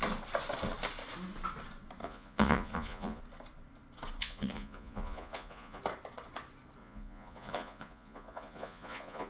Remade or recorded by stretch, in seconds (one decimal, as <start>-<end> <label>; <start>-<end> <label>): 0.0-2.0 recorded; 2.0-3.2 remade; 3.2-4.2 recorded; 4.2-5.8 remade; 5.8-6.8 recorded; 6.8-9.3 remade